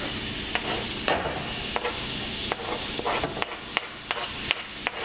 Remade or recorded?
recorded